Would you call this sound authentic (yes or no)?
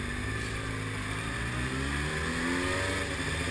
yes